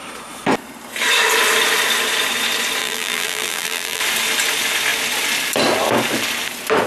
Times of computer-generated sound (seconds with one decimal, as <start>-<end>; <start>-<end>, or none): 2.8-4.0